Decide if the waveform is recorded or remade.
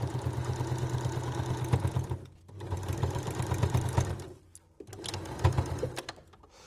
recorded